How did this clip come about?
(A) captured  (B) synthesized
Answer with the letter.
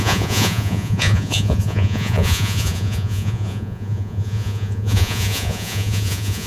B